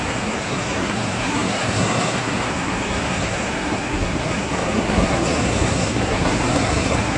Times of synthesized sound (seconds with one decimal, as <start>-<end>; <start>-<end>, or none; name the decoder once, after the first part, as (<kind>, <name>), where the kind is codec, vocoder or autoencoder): 0.0-7.2 (codec, SNAC)